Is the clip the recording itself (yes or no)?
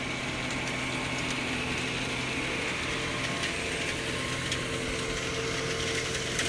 yes